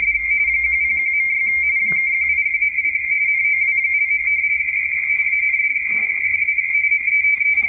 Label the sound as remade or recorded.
recorded